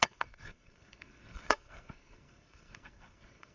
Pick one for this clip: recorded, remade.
remade